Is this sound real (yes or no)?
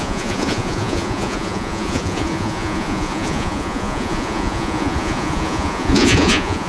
no